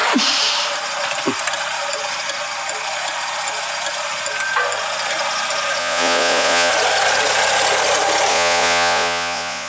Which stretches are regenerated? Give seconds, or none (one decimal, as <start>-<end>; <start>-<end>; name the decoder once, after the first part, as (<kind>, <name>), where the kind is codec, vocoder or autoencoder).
5.8-6.7 (vocoder, Vocos); 8.3-9.7